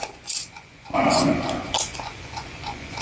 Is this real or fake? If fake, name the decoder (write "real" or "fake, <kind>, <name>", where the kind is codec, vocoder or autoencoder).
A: fake, vocoder, Vocos